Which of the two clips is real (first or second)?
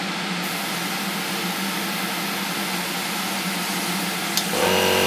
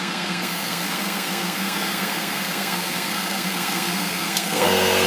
first